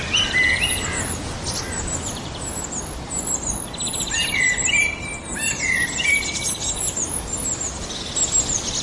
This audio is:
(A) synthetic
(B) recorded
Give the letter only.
B